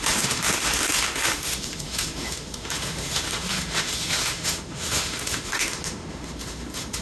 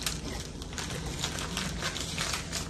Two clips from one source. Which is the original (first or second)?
second